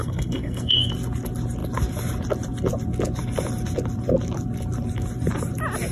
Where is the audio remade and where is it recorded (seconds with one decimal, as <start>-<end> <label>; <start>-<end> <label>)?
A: 0.0-0.9 remade; 0.9-5.9 recorded